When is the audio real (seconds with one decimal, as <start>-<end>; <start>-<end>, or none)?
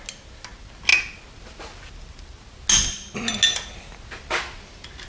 0.0-5.1